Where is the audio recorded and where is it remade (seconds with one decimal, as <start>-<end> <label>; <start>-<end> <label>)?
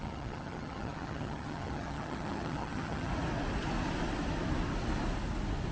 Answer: 0.0-3.1 remade; 3.1-5.7 recorded